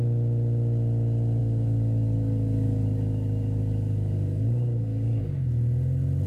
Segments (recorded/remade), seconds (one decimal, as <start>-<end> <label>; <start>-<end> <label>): 0.0-1.4 recorded; 1.4-5.2 remade; 5.2-6.3 recorded